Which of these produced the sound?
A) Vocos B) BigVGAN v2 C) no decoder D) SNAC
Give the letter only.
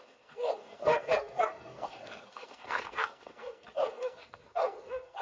D